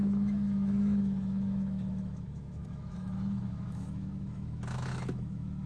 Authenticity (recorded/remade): remade